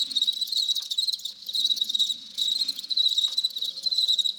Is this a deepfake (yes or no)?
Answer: yes